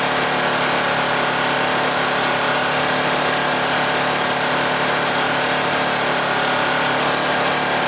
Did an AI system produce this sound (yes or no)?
yes